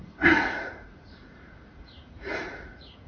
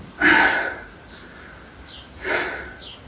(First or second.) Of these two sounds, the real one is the second